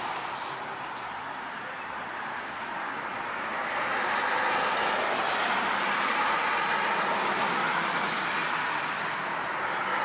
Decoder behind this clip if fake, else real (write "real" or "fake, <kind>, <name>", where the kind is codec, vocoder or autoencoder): real